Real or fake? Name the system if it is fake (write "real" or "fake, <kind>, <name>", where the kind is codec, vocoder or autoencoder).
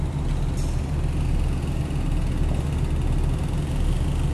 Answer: real